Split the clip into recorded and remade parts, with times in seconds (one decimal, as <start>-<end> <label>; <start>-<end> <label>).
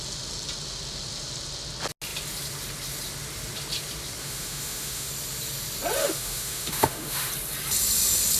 0.0-4.2 recorded; 4.2-5.1 remade; 5.1-6.0 recorded; 6.0-7.3 remade; 7.3-8.4 recorded